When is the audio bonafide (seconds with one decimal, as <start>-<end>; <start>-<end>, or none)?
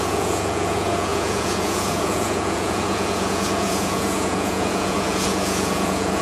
none